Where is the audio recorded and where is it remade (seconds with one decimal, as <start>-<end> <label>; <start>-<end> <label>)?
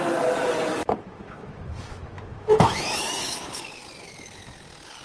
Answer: 0.0-0.8 recorded; 0.8-3.6 remade; 3.6-5.0 recorded